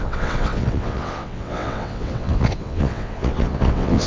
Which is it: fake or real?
fake